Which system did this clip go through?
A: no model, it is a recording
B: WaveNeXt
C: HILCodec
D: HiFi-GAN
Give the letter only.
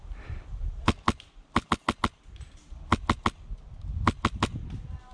A